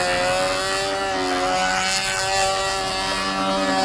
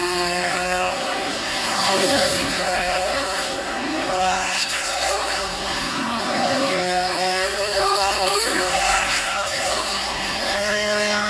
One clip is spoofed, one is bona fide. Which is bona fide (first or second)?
first